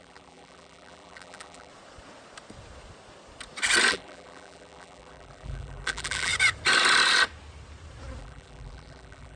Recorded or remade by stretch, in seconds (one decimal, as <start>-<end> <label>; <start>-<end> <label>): 0.0-1.7 remade; 1.7-3.9 recorded; 3.9-6.3 remade; 6.3-8.2 recorded; 8.2-9.4 remade

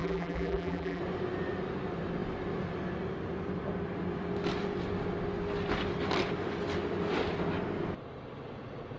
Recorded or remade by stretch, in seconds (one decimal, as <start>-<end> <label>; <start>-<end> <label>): 0.0-1.0 remade; 1.0-9.0 recorded

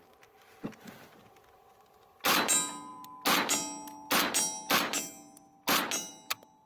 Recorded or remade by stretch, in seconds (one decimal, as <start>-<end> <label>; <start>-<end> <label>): 0.0-6.7 recorded

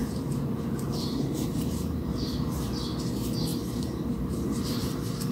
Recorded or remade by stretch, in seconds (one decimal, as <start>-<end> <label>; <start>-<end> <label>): 0.0-2.9 remade; 2.9-3.5 recorded; 3.5-5.3 remade

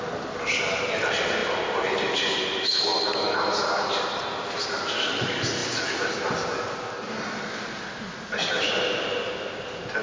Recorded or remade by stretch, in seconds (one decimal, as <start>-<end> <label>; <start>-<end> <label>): 0.0-1.4 recorded; 1.4-2.4 remade; 2.4-10.0 recorded

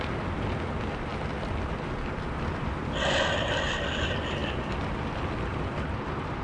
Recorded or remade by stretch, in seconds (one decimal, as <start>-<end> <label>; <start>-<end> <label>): 0.0-4.4 recorded; 4.4-5.7 remade; 5.7-6.4 recorded